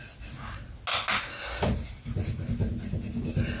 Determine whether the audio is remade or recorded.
recorded